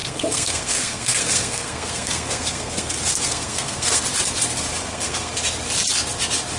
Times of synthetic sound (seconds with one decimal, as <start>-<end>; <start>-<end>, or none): 0.0-4.0; 4.8-5.3